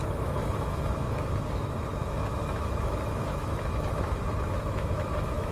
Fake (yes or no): yes